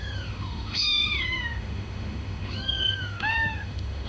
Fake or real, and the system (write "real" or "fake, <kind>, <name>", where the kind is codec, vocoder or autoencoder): fake, autoencoder, DAC-VAE